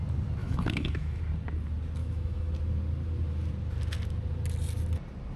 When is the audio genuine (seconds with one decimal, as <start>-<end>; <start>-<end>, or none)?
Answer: 0.0-0.4; 1.2-2.0; 2.5-5.4